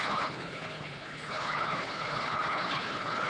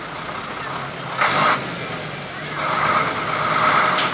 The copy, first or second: first